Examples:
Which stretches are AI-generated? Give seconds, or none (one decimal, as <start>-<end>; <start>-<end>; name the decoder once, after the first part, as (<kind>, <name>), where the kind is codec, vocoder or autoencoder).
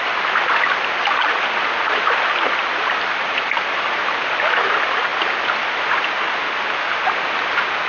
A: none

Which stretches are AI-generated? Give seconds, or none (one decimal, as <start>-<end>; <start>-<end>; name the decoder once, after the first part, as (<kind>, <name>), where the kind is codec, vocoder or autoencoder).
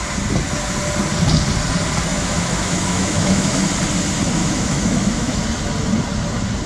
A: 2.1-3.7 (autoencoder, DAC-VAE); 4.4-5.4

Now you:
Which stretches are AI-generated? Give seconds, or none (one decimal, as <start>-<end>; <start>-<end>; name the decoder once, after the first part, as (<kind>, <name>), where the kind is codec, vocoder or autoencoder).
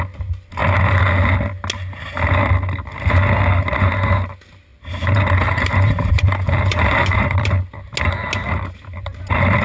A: 4.7-7.5 (vocoder, BigVGAN v2)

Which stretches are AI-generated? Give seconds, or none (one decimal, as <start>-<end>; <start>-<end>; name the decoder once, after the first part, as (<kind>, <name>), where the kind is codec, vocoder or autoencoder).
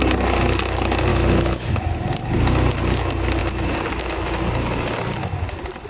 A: 1.1-1.7 (autoencoder, DAC-VAE)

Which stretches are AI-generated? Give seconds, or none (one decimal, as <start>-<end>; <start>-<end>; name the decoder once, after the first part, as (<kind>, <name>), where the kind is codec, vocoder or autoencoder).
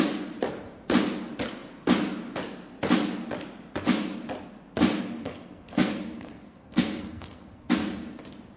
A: 5.0-7.7 (codec, SNAC)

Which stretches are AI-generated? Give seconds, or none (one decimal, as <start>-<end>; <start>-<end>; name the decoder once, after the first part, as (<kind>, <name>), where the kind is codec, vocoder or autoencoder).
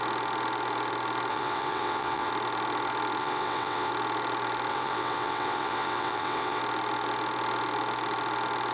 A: 1.3-2.3 (vocoder, WaveNeXt); 3.2-3.9; 4.7-6.6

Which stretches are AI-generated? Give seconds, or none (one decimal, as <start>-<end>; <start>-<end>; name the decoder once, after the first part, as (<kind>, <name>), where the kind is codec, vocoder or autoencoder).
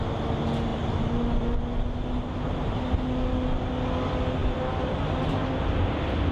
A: 0.7-1.6 (vocoder, BigVGAN v2)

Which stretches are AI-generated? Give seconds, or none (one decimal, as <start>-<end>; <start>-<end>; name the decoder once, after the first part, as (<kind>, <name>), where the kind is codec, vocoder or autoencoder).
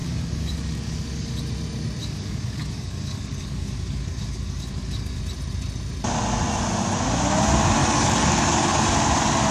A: 0.0-1.4 (codec, DAC); 2.0-5.2; 7.8-8.8